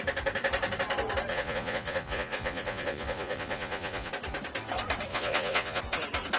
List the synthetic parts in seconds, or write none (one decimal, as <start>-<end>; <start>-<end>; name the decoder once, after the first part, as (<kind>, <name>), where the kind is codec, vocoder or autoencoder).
1.3-4.1 (vocoder, Vocos); 5.1-5.8